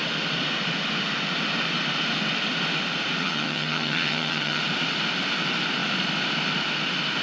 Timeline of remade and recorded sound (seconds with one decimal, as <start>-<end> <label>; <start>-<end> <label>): 0.0-3.2 recorded; 3.2-4.6 remade; 4.6-7.2 recorded

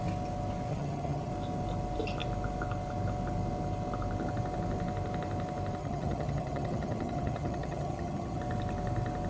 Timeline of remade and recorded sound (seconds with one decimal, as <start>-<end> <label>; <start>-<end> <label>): 0.0-0.7 recorded; 0.7-1.3 remade; 1.3-5.8 recorded; 5.8-8.4 remade; 8.4-9.3 recorded

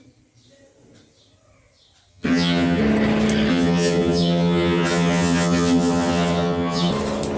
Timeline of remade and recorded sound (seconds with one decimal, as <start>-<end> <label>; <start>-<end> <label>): 0.0-2.1 recorded; 2.1-2.8 remade; 2.8-3.5 recorded; 3.5-6.9 remade; 6.9-7.4 recorded

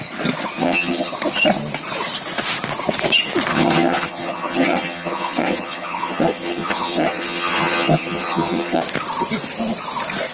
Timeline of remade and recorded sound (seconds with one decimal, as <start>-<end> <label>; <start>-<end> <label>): 0.0-0.6 recorded; 0.6-1.1 remade; 1.1-3.5 recorded; 3.5-8.8 remade; 8.8-10.3 recorded

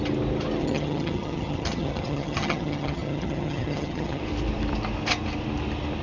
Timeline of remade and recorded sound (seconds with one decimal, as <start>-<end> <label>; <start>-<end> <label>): 0.0-0.6 recorded; 0.6-4.2 remade; 4.2-6.0 recorded

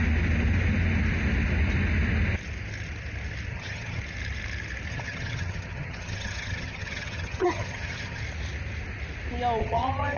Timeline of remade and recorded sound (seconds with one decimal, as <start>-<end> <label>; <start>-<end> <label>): 0.0-3.5 recorded; 3.5-4.0 remade; 4.0-4.9 recorded; 4.9-8.2 remade; 8.2-9.6 recorded; 9.6-10.2 remade

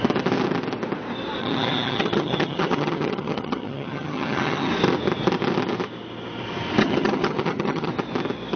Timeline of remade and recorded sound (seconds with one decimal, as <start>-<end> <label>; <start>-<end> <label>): 0.0-1.4 recorded; 1.4-4.7 remade; 4.7-6.8 recorded; 6.8-7.9 remade; 7.9-8.6 recorded

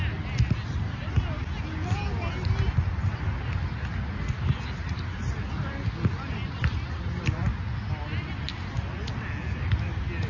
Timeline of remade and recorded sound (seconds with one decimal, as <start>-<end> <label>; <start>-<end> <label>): 0.0-10.3 recorded